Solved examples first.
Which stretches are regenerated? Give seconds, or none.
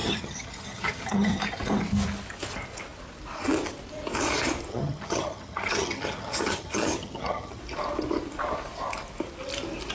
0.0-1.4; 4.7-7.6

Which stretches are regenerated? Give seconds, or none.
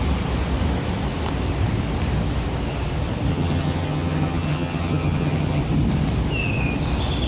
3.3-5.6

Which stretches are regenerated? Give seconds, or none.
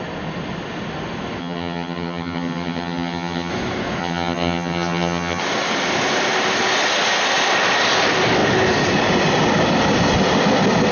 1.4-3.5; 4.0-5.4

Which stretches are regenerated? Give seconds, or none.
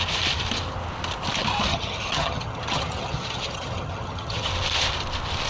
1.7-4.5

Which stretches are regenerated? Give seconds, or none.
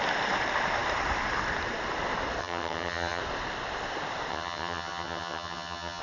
2.4-3.2; 4.3-6.0